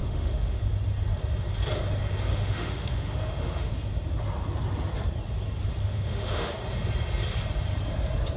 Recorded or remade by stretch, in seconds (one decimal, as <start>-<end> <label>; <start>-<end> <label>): 0.0-0.6 remade; 0.6-2.3 recorded; 2.3-3.7 remade; 3.7-5.8 recorded; 5.8-6.5 remade; 6.5-8.4 recorded